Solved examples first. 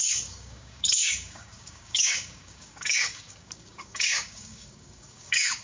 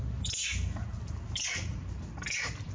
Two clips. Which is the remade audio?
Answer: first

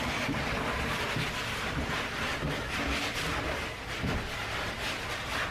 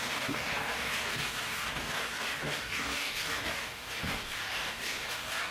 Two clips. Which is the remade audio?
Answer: second